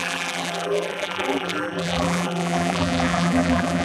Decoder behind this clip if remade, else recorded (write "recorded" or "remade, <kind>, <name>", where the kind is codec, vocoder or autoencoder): remade, vocoder, BigVGAN v2